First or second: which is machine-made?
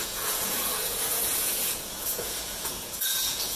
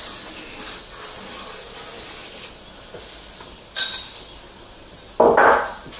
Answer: first